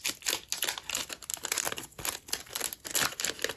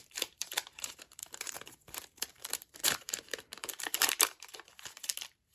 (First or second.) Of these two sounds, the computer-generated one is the second